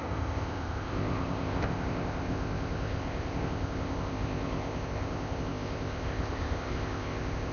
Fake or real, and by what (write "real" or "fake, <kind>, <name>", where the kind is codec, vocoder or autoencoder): fake, codec, ZipCodec